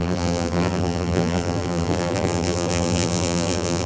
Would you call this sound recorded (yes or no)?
no